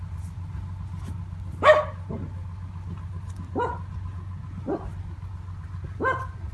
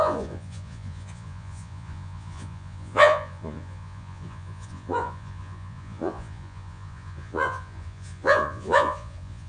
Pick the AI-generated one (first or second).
second